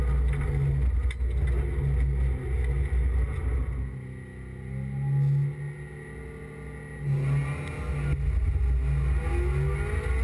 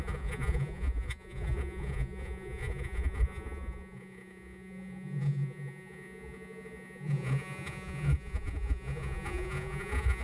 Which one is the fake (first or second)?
second